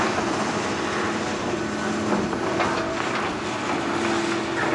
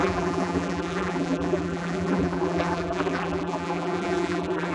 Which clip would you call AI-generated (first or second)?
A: second